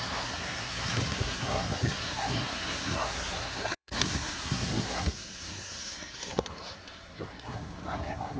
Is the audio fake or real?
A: fake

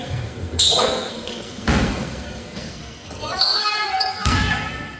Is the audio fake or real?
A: fake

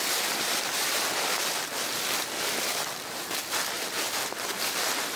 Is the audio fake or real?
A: real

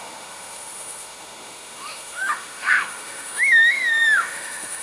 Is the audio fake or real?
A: fake